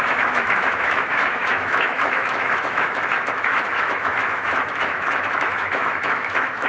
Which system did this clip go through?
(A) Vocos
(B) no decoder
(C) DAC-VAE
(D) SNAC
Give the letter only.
C